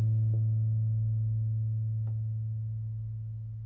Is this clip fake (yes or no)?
no